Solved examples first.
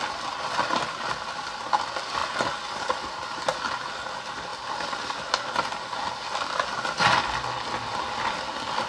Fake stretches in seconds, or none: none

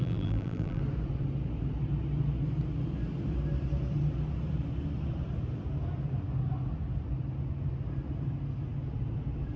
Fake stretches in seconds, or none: 0.0-0.8 (vocoder, BigVGAN v2)

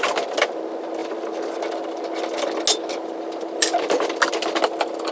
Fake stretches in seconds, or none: none

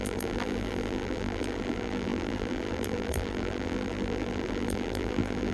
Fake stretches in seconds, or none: 0.0-5.5 (vocoder, BigVGAN v2)